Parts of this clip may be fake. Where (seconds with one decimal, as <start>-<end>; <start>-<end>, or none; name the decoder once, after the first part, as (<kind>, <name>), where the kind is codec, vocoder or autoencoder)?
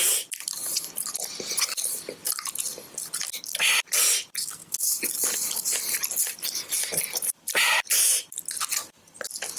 4.4-5.0 (codec, SNAC)